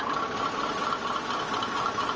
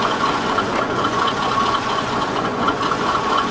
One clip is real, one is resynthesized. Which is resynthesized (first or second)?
second